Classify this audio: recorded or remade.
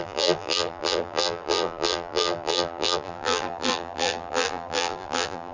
remade